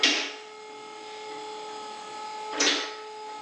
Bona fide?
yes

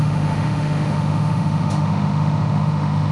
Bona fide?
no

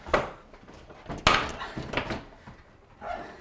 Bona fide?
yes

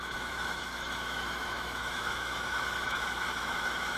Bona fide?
no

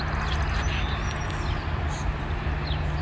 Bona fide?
yes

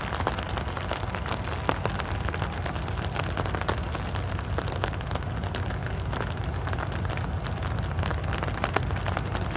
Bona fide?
yes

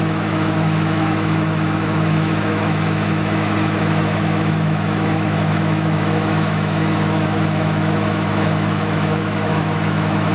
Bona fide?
no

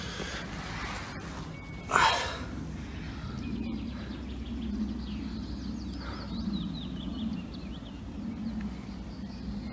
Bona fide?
yes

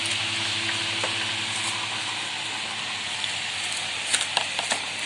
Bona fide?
yes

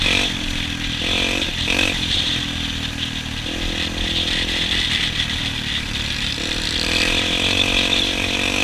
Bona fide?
yes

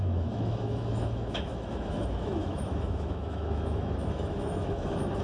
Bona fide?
no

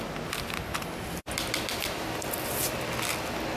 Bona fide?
yes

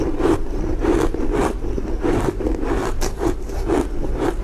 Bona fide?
yes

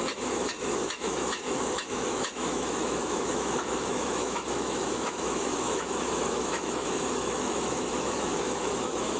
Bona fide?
no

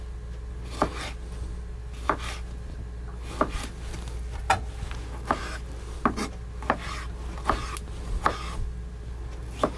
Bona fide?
yes